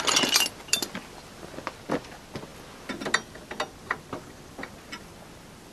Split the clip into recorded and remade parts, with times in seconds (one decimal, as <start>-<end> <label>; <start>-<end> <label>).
0.0-5.7 recorded